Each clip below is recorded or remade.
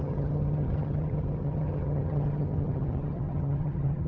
remade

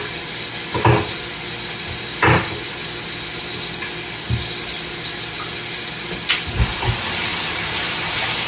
recorded